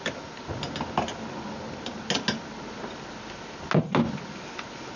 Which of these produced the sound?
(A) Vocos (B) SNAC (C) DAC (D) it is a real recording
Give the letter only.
D